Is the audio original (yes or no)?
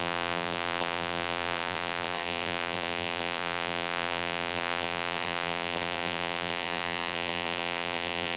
no